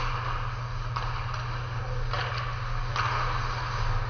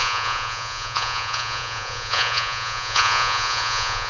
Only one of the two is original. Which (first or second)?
first